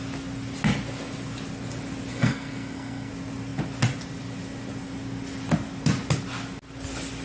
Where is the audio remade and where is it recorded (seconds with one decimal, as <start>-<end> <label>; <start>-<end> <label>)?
0.0-2.1 recorded; 2.1-3.1 remade; 3.1-7.2 recorded